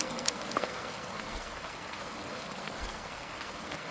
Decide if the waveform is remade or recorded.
remade